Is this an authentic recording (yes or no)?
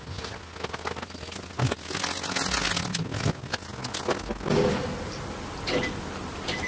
yes